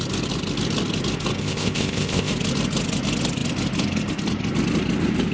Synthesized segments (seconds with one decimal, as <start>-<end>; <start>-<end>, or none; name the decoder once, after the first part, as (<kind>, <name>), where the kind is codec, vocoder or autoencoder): 1.4-2.3 (codec, ZipCodec)

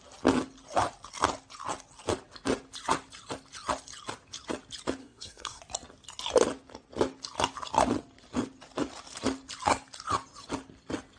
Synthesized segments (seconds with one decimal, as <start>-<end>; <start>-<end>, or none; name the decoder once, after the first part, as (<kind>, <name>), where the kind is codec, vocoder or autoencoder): 5.0-5.6 (codec, SNAC)

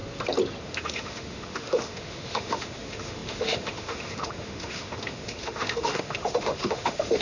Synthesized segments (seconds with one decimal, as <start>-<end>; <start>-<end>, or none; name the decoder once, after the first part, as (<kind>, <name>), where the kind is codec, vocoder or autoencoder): 0.6-7.2 (autoencoder, DAC-VAE)

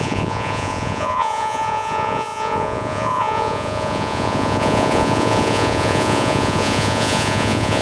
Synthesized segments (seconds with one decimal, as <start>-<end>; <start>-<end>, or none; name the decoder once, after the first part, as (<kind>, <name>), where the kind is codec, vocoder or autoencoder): 0.0-7.8 (vocoder, Vocos)